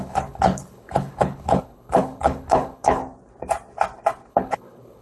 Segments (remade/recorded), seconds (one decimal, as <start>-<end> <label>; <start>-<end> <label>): 0.0-3.0 remade; 3.0-4.3 recorded; 4.3-5.0 remade